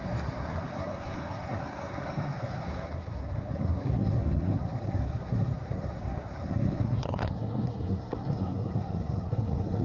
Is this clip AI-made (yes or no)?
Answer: yes